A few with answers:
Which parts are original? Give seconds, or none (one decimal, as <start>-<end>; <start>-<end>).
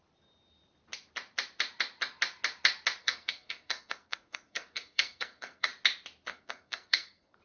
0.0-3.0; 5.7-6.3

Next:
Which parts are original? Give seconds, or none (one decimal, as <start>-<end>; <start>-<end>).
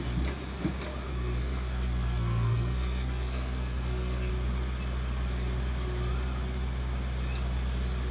0.0-1.1; 4.3-8.1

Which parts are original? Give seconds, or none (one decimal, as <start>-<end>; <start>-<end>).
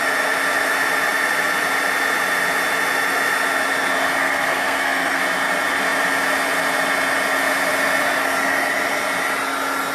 0.0-4.2; 5.2-9.9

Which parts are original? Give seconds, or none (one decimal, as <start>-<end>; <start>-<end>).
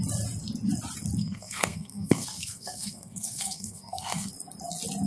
0.0-1.2; 4.3-5.1